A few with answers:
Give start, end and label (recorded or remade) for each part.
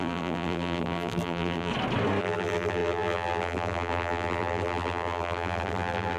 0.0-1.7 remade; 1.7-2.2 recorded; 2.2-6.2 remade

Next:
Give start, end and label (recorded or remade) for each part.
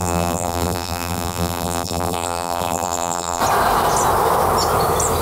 0.0-3.4 remade; 3.4-5.2 recorded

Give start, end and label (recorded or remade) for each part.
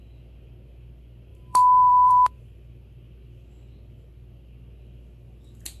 0.0-1.3 recorded; 1.3-2.4 remade; 2.4-5.8 recorded